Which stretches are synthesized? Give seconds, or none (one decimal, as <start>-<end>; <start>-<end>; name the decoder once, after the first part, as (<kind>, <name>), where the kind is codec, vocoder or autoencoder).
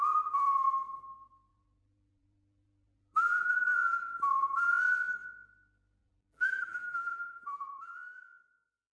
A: 1.5-3.5 (vocoder, BigVGAN v2); 6.0-7.9